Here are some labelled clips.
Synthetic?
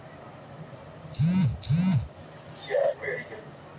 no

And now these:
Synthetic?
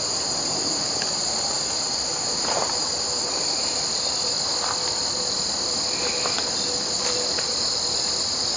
no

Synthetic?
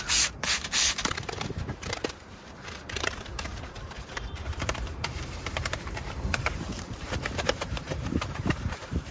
yes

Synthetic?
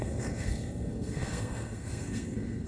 yes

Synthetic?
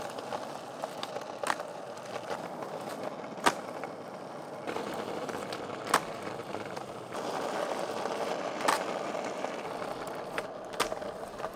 no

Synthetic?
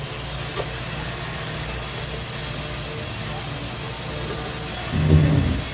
no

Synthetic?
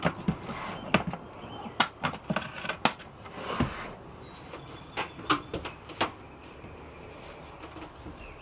no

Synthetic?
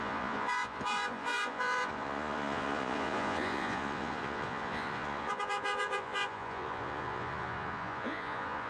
yes